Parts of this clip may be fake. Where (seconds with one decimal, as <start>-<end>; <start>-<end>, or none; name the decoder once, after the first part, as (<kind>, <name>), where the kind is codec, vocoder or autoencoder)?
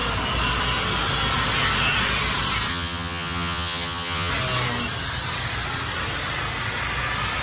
2.7-4.3 (vocoder, HiFi-GAN)